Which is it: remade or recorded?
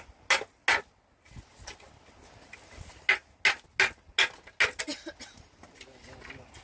recorded